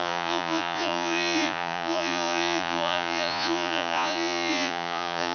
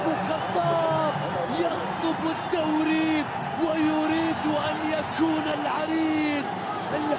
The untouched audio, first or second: second